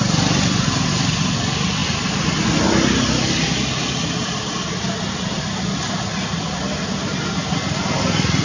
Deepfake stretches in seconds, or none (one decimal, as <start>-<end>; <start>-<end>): 1.8-2.5